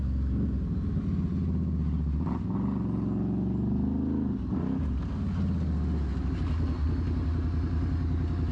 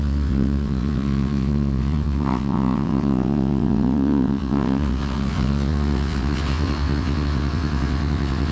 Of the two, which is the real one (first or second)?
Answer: first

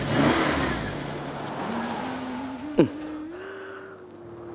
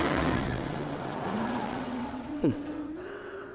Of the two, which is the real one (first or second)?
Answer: first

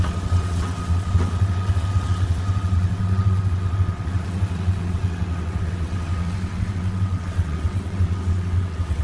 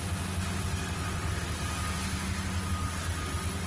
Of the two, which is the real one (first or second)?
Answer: second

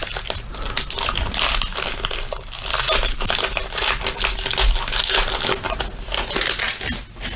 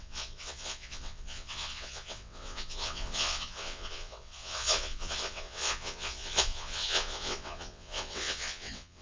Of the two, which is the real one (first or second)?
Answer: first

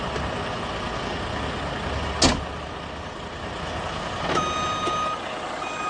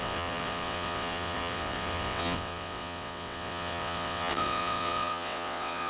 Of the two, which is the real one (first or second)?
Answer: first